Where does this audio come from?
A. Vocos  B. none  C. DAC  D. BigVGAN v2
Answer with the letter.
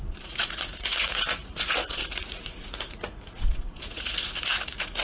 A